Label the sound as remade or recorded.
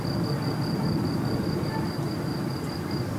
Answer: recorded